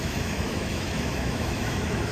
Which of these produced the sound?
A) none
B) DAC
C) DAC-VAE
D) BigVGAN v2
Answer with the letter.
C